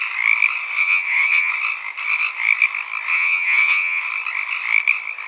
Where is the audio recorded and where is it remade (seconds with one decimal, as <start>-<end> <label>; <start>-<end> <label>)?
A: 0.0-0.8 recorded; 0.8-1.5 remade; 1.5-3.1 recorded; 3.1-4.0 remade; 4.0-5.3 recorded